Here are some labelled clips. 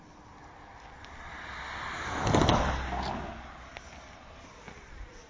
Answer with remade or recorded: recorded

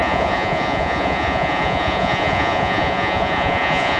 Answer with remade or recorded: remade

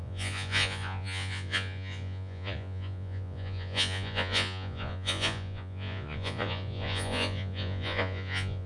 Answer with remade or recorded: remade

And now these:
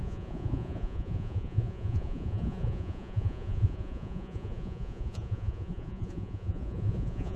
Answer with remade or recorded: remade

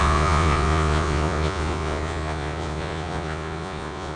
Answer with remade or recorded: remade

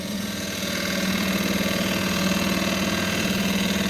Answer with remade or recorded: remade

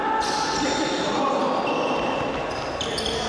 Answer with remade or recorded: recorded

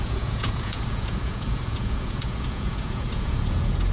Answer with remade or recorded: remade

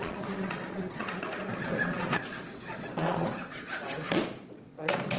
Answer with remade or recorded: remade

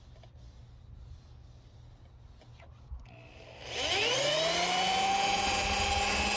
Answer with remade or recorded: recorded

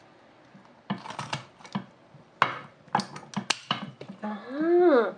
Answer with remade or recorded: recorded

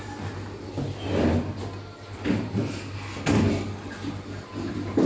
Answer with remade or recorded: recorded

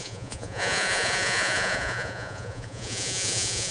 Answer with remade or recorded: remade